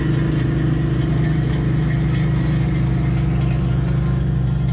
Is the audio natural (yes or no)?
yes